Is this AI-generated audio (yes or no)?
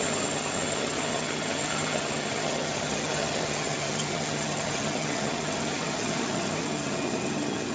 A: yes